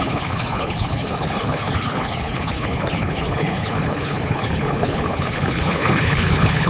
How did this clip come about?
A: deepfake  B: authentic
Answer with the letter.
A